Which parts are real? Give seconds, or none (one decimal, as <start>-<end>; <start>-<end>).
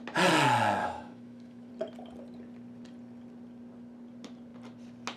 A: 0.0-0.8; 1.7-5.2